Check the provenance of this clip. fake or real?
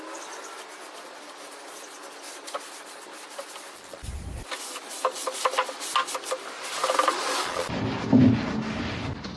real